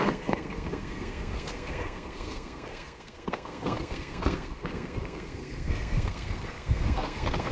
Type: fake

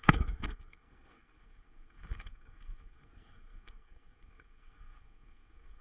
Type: fake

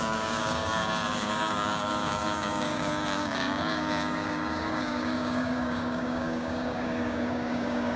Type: fake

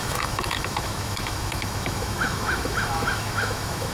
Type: fake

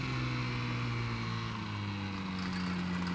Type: real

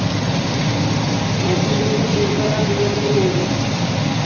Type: real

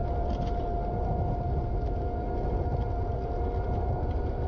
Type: real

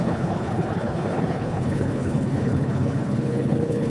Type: fake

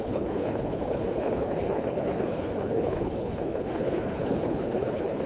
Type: fake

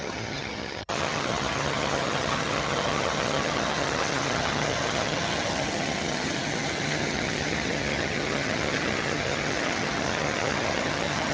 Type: fake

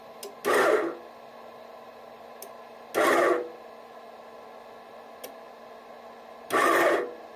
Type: real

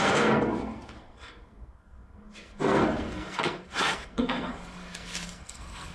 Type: fake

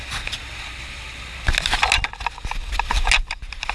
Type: real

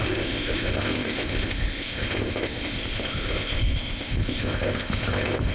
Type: fake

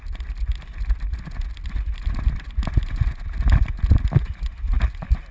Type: real